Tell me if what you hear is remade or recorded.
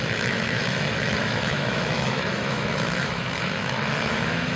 remade